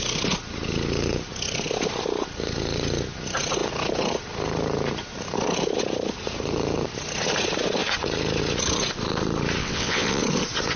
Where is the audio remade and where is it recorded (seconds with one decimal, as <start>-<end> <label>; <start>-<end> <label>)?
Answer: 0.0-9.6 recorded; 9.6-10.2 remade; 10.2-10.8 recorded